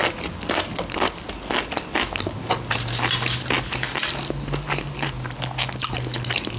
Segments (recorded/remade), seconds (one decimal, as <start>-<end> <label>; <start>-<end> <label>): 0.0-4.0 remade; 4.0-6.6 recorded